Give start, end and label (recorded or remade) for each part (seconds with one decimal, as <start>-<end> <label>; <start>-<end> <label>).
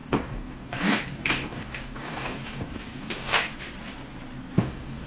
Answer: 0.0-3.5 remade; 3.5-4.6 recorded; 4.6-5.1 remade